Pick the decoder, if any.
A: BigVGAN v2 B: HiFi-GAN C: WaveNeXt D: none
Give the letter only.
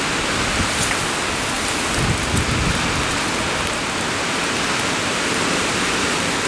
D